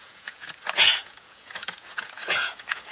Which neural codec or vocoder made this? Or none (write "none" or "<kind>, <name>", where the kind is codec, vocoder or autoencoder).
vocoder, Vocos